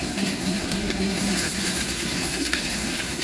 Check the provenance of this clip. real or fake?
fake